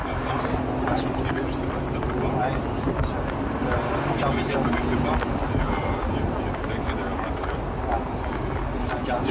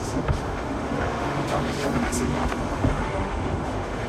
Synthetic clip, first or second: second